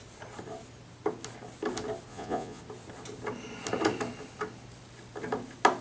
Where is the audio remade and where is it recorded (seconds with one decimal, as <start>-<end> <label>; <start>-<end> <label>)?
0.0-2.1 recorded; 2.1-2.6 remade; 2.6-5.8 recorded